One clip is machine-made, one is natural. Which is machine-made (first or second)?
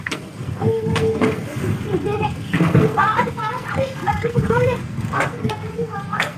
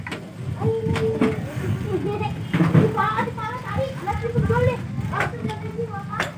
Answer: first